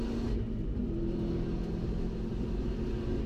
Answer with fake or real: real